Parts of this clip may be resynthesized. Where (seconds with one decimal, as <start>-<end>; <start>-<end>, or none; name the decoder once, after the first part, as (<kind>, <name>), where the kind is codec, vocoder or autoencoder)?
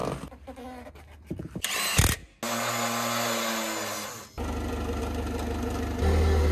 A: none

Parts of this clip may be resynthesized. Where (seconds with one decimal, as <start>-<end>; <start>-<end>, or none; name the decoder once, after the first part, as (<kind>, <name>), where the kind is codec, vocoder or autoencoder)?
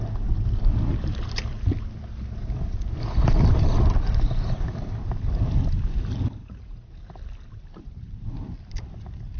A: 6.4-6.9 (vocoder, Vocos)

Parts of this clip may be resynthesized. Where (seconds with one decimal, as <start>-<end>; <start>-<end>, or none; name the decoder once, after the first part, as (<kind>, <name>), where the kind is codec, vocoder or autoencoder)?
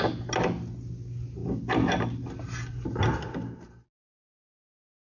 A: none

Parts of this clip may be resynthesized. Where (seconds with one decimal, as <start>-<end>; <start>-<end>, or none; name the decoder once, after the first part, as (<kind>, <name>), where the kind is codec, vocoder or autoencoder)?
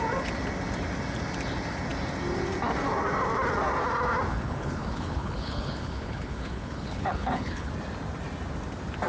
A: 4.3-7.7 (codec, HILCodec)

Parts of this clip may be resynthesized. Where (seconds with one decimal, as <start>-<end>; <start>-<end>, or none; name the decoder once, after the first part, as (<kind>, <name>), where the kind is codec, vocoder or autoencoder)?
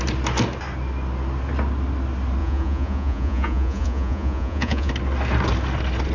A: 2.4-4.9 (vocoder, Vocos)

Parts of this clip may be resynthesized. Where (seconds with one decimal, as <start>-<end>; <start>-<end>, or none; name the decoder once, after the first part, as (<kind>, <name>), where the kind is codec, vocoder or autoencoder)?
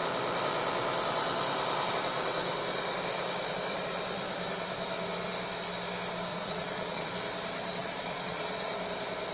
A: 6.3-7.1 (vocoder, Vocos); 7.8-8.7